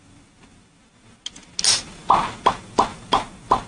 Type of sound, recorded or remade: recorded